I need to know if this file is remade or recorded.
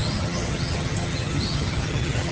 remade